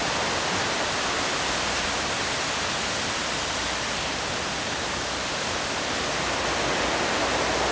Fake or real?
real